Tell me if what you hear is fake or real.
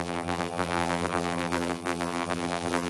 fake